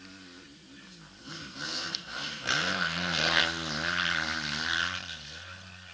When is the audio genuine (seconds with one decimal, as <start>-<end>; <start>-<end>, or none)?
0.0-1.2; 3.4-5.9